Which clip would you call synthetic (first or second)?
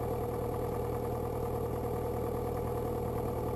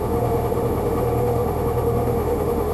second